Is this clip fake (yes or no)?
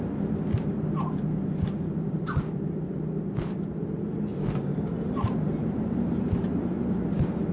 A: no